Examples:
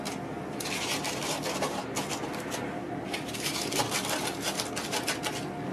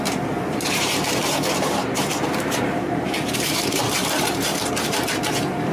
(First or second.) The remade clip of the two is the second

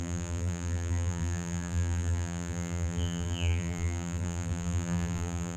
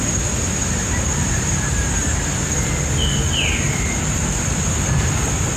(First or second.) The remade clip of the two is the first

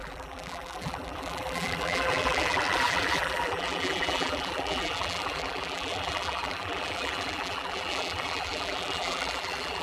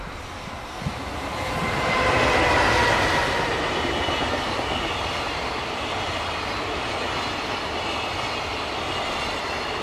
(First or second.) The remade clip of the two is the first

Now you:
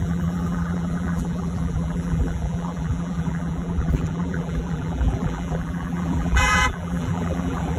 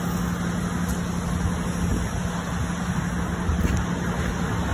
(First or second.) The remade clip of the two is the first